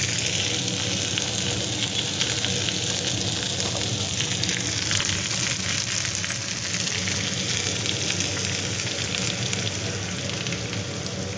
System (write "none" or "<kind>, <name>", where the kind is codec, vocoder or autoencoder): none